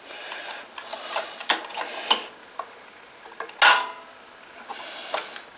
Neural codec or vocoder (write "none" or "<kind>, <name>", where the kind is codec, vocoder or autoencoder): none